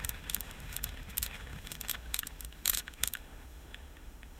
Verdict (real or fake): fake